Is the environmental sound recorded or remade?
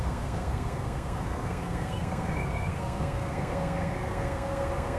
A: remade